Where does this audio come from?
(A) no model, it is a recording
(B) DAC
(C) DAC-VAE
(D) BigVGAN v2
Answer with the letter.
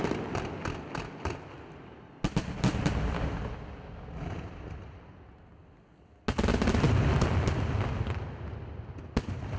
A